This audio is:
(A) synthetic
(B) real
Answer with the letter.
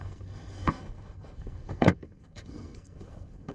A